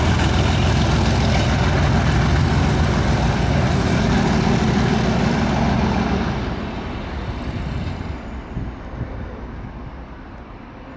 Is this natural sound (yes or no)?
yes